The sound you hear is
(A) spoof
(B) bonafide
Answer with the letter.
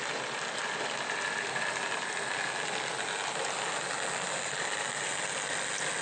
B